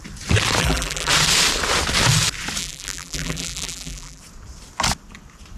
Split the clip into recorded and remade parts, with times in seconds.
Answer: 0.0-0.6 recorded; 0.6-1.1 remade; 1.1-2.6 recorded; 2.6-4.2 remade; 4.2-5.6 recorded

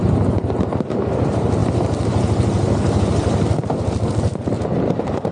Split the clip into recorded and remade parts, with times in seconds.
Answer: 0.0-1.6 remade; 1.6-3.0 recorded; 3.0-5.3 remade

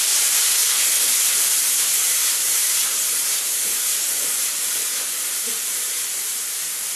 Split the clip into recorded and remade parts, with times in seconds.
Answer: 0.0-0.6 remade; 0.6-1.3 recorded; 1.3-3.9 remade; 3.9-5.7 recorded; 5.7-7.0 remade

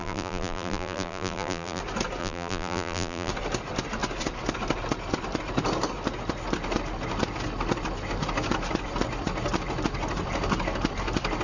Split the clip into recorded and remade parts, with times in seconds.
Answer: 0.0-1.8 remade; 1.8-2.2 recorded; 2.2-3.3 remade; 3.3-11.4 recorded

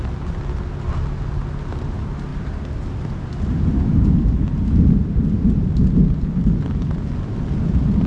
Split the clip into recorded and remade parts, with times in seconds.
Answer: 0.0-2.3 recorded; 2.3-3.2 remade; 3.2-8.1 recorded

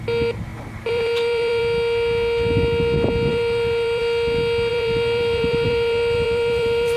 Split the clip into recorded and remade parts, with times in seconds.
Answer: 0.0-0.5 recorded; 0.5-1.6 remade; 1.6-3.3 recorded; 3.3-4.0 remade; 4.0-4.7 recorded; 4.7-7.0 remade

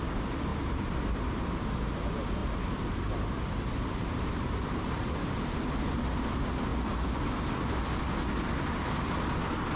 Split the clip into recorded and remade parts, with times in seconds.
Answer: 0.0-0.5 recorded; 0.5-1.4 remade; 1.4-2.4 recorded; 2.4-5.2 remade; 5.2-9.8 recorded

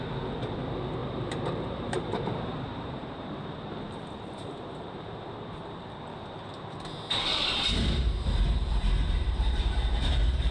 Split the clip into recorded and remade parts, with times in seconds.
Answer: 0.0-1.0 recorded; 1.0-6.0 remade; 6.0-7.3 recorded; 7.3-10.5 remade